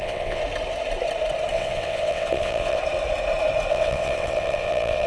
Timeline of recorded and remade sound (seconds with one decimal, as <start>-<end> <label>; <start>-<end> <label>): 0.0-0.4 remade; 0.4-1.5 recorded; 1.5-2.8 remade; 2.8-3.7 recorded; 3.7-5.1 remade

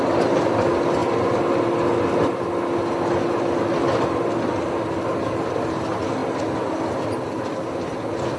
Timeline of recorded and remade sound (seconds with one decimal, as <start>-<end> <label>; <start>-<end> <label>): 0.0-8.4 recorded

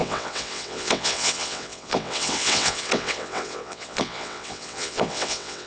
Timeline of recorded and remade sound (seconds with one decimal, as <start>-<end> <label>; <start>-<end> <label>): 0.0-5.7 remade

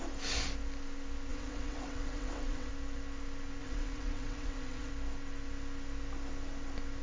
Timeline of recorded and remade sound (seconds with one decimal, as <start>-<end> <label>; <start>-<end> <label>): 0.0-1.3 recorded; 1.3-2.7 remade; 2.7-3.6 recorded; 3.6-4.9 remade; 4.9-7.0 recorded

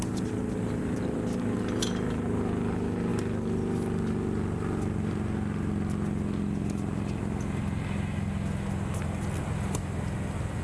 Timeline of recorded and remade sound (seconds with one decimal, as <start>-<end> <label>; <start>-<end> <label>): 0.0-10.6 recorded

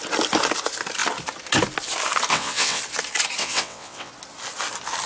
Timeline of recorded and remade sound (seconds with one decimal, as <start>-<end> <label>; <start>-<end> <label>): 0.0-2.3 recorded; 2.3-2.8 remade; 2.8-3.4 recorded; 3.4-4.1 remade; 4.1-5.1 recorded

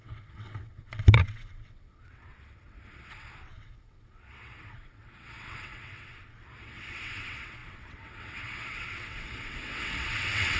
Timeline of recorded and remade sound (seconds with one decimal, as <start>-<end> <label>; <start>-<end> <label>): 0.0-10.6 remade